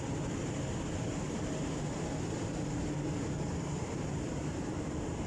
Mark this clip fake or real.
real